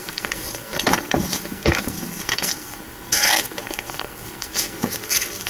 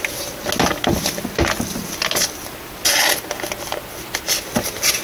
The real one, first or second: second